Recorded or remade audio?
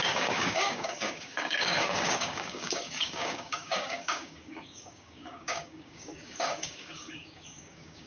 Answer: remade